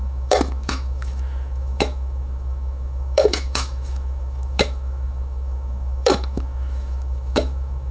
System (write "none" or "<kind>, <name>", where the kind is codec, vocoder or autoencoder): autoencoder, DAC-VAE